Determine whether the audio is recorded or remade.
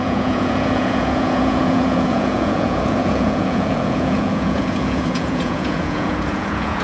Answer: remade